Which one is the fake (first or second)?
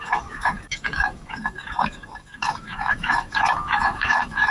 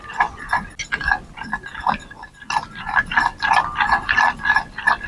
first